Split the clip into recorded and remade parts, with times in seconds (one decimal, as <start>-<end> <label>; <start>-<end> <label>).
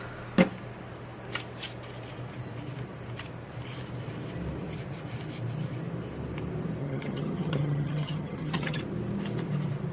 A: 0.0-6.8 recorded; 6.8-8.8 remade; 8.8-9.9 recorded